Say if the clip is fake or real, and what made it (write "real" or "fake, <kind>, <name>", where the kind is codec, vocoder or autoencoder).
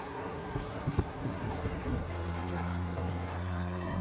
fake, codec, SNAC